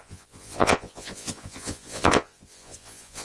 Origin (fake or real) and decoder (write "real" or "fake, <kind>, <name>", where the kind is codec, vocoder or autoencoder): fake, vocoder, Vocos